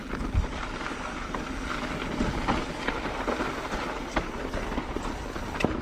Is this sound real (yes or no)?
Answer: yes